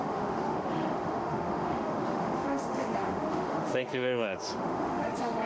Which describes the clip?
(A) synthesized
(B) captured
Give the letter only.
A